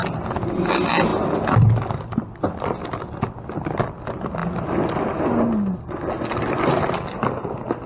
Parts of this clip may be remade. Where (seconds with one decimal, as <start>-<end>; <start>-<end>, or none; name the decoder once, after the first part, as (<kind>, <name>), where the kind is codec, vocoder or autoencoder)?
none